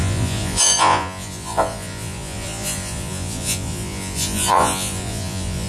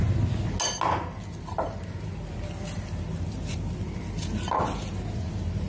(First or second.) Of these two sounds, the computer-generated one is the first